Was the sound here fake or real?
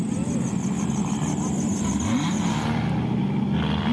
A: real